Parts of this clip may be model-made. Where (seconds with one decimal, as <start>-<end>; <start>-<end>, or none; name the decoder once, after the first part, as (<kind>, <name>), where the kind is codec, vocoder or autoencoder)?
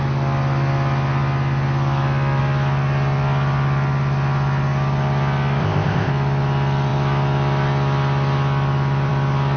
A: 5.6-6.1 (codec, ZipCodec)